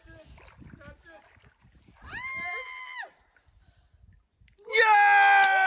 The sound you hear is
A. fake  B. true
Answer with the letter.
B